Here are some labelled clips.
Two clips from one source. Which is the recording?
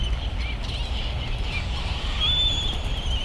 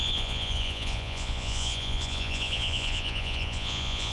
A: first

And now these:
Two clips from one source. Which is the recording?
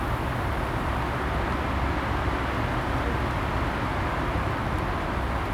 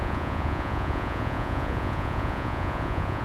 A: first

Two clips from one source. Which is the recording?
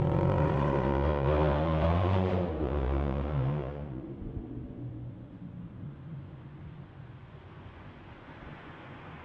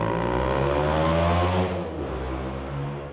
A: second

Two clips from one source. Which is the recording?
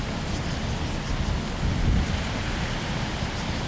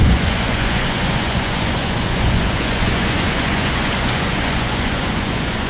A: first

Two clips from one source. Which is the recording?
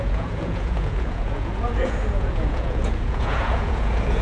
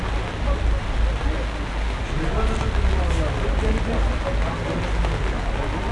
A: second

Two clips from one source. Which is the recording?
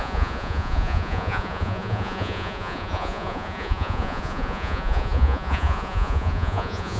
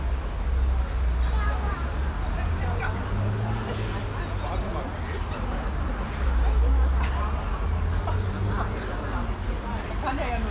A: second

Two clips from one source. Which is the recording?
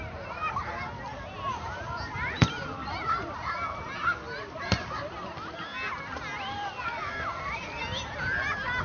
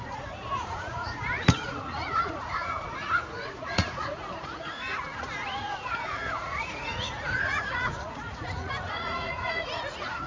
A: first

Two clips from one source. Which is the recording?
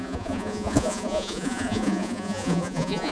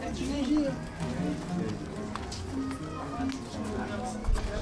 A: second